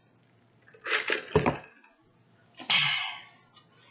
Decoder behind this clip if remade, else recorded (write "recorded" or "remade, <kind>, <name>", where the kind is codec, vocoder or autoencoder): recorded